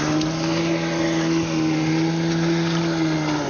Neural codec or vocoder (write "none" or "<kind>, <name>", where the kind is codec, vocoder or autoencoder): none